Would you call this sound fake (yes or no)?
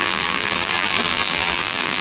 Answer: yes